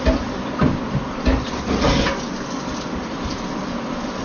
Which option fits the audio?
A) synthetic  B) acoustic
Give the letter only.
B